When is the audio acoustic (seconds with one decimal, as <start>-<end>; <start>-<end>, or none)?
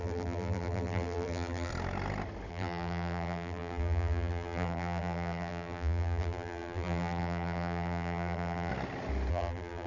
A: 1.7-2.5; 8.7-9.3